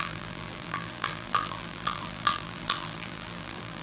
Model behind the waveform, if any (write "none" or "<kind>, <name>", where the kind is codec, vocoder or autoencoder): vocoder, BigVGAN v2